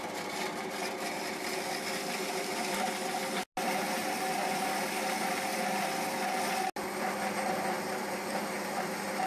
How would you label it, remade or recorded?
recorded